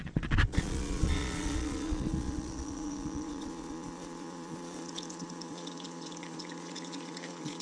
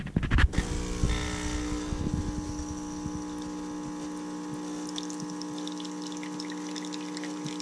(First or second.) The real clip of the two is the second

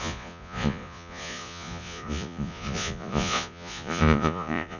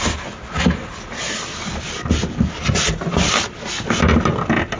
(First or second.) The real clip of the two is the second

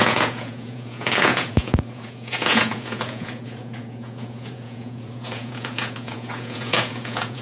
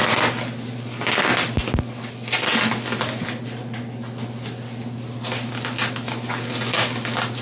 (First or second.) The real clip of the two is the second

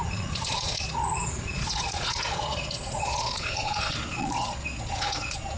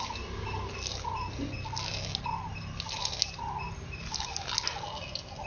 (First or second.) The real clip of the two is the second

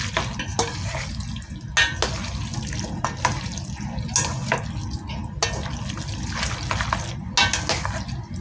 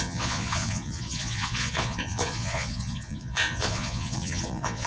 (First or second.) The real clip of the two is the first